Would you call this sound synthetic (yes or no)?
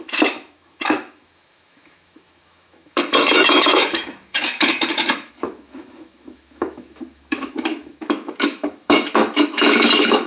yes